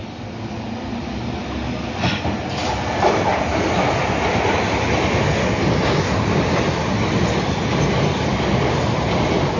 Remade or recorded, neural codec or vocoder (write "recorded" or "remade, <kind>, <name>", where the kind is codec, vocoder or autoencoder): recorded